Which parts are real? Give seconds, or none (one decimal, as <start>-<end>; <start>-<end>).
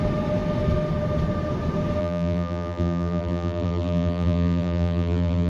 0.0-2.0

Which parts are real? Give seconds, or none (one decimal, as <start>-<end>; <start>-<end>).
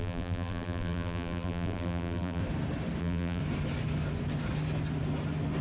2.4-3.0; 3.4-5.6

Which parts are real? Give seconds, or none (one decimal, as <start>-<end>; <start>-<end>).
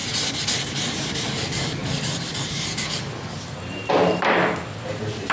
0.0-0.9; 1.8-5.3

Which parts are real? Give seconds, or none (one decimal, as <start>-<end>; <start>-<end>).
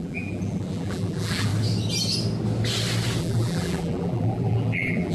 1.5-3.2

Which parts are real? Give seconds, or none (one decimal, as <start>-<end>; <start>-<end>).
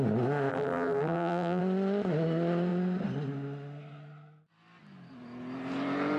0.0-0.5; 1.6-6.2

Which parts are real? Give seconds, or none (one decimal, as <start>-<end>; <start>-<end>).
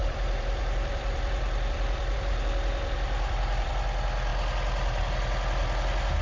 3.7-6.2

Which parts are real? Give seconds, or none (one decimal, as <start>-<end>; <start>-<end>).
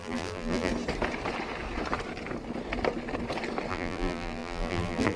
0.7-3.7